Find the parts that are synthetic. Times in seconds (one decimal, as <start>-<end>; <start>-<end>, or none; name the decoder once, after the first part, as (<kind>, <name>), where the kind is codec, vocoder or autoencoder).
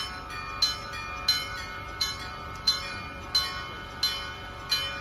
1.4-3.2 (vocoder, BigVGAN v2)